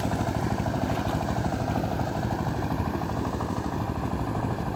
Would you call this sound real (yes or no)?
no